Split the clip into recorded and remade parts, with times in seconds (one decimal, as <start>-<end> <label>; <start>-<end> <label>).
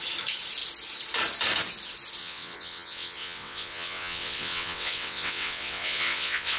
0.0-2.2 recorded; 2.2-6.6 remade